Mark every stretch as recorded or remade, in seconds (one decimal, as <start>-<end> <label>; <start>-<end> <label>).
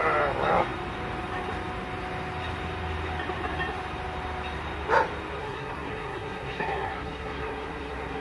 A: 0.0-5.4 recorded; 5.4-8.2 remade